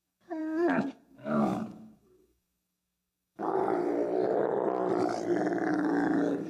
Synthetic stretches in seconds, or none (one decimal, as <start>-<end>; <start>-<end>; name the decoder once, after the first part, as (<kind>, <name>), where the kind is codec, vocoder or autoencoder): 0.0-3.6 (codec, DAC); 5.7-6.5